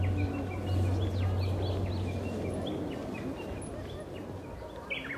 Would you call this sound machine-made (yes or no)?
no